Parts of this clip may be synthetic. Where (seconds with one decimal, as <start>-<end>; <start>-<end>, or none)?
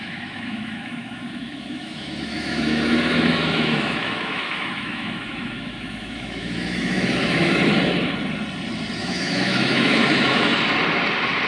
0.0-7.6; 9.0-10.5